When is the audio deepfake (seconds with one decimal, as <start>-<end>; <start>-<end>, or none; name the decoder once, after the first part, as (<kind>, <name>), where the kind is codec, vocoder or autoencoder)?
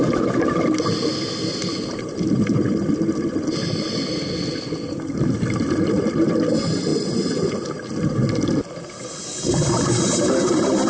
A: 6.9-7.5 (vocoder, Vocos)